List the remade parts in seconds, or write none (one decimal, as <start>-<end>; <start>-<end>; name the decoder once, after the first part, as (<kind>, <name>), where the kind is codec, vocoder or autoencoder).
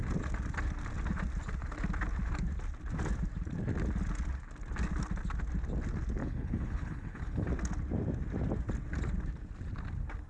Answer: 6.2-7.5 (codec, HILCodec)